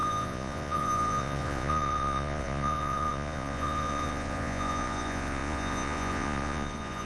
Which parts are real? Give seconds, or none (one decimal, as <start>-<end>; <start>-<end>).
none